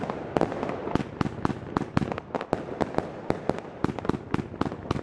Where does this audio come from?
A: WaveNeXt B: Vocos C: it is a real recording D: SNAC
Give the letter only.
C